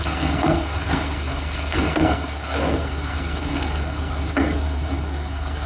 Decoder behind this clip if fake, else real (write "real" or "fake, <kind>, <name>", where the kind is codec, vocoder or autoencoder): fake, codec, SNAC